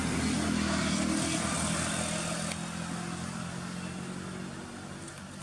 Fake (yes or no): no